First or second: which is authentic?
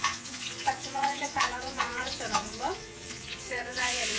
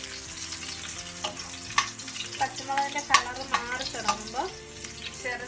second